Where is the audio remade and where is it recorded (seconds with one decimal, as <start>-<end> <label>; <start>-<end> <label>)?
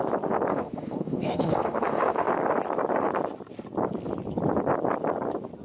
0.0-0.5 recorded; 0.5-2.3 remade; 2.3-5.6 recorded